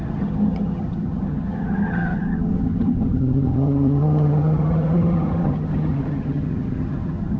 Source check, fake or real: fake